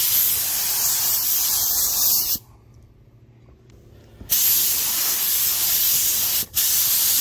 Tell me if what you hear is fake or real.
real